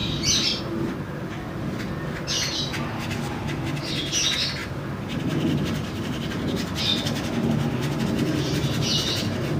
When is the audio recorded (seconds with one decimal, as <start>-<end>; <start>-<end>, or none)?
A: 0.6-9.6